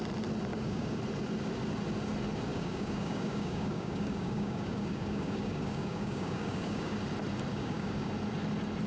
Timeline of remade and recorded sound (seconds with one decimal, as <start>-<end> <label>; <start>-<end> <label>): 0.0-0.5 recorded; 0.5-1.0 remade; 1.0-2.5 recorded; 2.5-7.0 remade; 7.0-7.5 recorded; 7.5-8.1 remade; 8.1-8.9 recorded

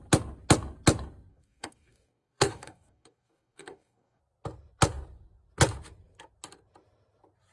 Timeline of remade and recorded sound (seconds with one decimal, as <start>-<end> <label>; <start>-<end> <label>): 0.0-1.3 recorded; 1.3-4.2 remade; 4.2-7.5 recorded

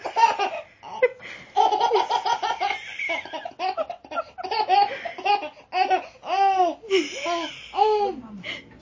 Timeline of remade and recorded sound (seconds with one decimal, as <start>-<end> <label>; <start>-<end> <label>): 0.0-8.8 recorded

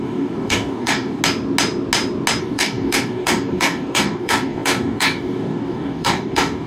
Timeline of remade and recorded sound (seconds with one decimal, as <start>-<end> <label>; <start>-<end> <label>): 0.0-1.2 remade; 1.2-2.4 recorded; 2.4-6.7 remade

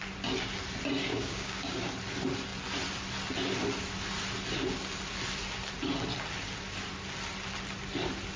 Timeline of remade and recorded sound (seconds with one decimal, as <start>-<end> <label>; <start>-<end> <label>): 0.0-1.1 recorded; 1.1-1.9 remade; 1.9-8.4 recorded

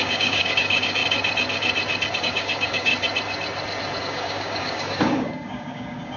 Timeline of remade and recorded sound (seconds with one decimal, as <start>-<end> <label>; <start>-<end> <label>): 0.0-1.0 remade; 1.0-2.2 recorded; 2.2-2.9 remade; 2.9-4.0 recorded; 4.0-6.2 remade

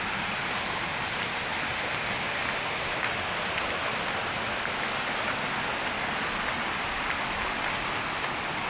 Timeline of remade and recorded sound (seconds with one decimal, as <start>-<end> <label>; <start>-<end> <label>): 0.0-8.7 recorded

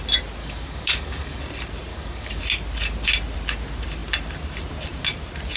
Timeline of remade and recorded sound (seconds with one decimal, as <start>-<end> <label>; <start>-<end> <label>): 0.0-0.4 recorded; 0.4-1.4 remade; 1.4-1.9 recorded; 1.9-2.4 remade; 2.4-5.6 recorded